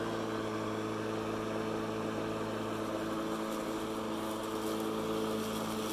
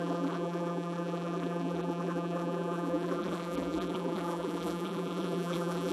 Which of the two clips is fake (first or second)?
second